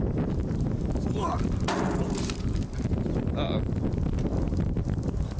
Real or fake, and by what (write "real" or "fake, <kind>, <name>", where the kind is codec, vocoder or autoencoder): real